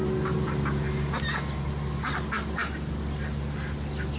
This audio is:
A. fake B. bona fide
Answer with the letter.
B